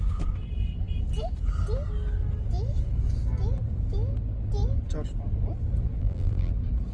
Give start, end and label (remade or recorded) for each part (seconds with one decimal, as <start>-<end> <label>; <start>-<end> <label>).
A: 0.0-6.0 recorded; 6.0-6.5 remade; 6.5-6.9 recorded